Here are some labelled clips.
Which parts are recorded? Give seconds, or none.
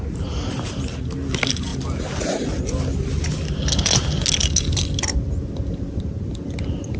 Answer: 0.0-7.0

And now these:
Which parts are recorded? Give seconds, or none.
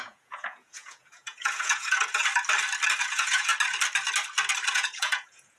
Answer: 2.2-3.0; 3.5-4.7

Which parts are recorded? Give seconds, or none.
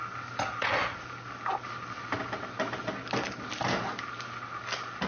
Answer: 0.0-5.1